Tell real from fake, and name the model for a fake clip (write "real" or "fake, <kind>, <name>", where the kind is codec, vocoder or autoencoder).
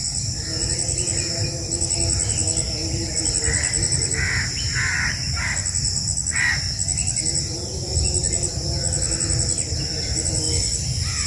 real